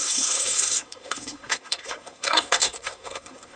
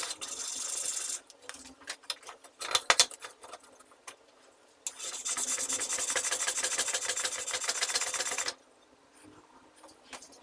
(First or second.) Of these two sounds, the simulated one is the first